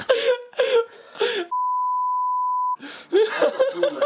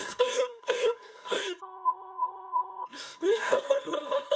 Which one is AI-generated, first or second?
second